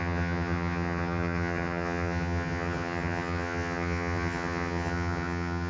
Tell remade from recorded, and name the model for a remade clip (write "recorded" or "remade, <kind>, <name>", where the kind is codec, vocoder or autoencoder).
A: remade, vocoder, HiFi-GAN